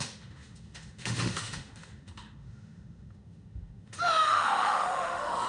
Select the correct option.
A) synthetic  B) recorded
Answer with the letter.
A